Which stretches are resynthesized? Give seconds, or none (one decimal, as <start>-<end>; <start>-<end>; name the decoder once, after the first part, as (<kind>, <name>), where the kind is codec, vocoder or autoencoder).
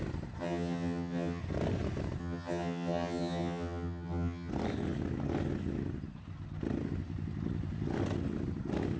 0.4-1.4 (vocoder, HiFi-GAN); 2.2-4.5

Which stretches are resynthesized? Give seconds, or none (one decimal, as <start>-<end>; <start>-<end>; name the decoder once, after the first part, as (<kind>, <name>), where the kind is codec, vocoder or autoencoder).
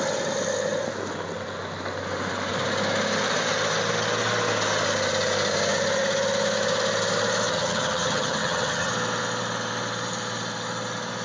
7.5-8.9 (vocoder, HiFi-GAN)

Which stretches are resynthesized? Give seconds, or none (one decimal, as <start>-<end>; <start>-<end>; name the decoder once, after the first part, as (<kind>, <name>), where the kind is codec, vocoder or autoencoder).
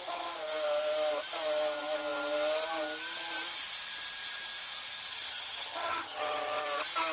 5.1-6.6 (vocoder, HiFi-GAN)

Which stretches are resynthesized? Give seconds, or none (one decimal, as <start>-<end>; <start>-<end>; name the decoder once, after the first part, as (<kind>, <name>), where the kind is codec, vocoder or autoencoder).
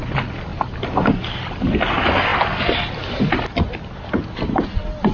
none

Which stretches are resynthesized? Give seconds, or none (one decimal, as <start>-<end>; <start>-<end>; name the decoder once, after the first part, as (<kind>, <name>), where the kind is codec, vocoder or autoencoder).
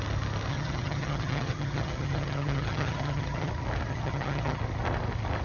0.5-3.5 (vocoder, HiFi-GAN); 3.9-4.6